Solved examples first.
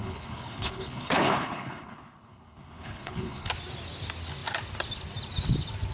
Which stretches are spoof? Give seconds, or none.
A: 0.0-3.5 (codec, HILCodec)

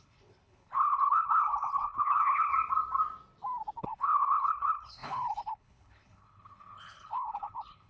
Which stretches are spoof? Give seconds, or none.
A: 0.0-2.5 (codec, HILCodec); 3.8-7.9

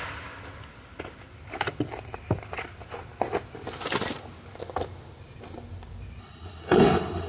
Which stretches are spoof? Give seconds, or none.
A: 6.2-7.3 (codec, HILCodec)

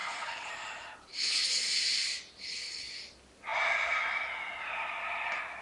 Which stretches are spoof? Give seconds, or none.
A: 0.0-0.5 (codec, HILCodec); 1.1-1.7; 2.4-2.9

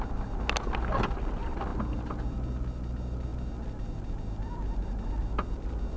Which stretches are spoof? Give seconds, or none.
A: none

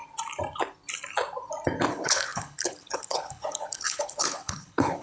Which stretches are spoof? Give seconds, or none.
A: 1.9-5.0 (codec, HILCodec)

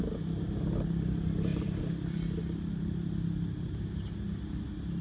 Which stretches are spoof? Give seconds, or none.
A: none

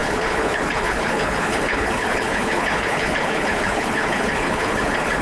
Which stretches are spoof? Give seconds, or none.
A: 0.0-5.2 (codec, HILCodec)